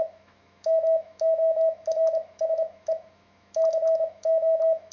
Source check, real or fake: fake